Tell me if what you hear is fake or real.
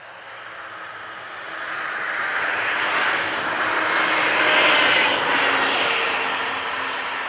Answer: real